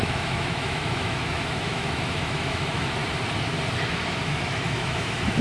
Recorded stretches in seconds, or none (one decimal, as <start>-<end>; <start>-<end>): 3.0-3.8